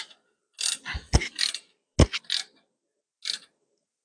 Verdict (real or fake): real